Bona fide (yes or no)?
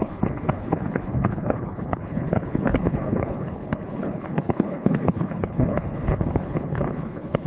no